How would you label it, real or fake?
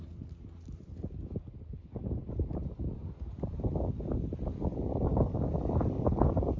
real